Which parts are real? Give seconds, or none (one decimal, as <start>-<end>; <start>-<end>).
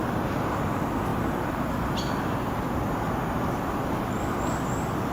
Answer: 0.0-5.1